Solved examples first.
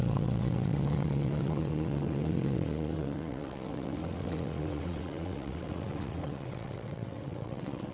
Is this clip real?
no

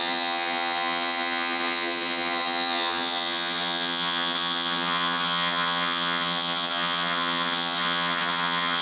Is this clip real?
no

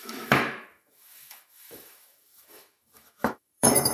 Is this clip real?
no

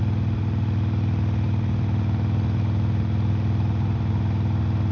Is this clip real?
yes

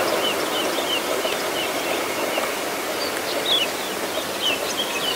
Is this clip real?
yes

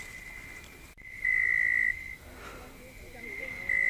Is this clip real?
yes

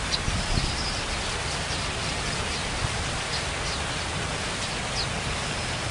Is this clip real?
yes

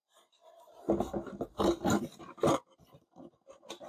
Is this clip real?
yes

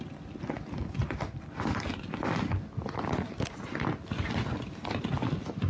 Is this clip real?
yes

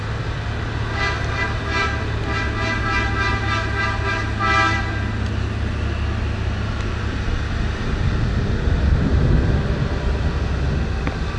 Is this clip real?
yes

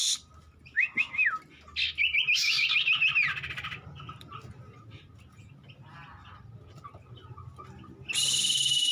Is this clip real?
yes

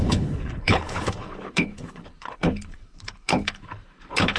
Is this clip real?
no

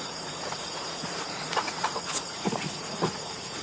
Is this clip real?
no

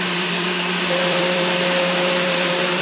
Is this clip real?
no